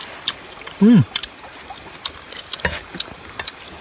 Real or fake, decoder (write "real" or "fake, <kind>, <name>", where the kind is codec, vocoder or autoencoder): real